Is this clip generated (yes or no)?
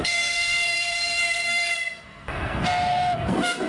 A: yes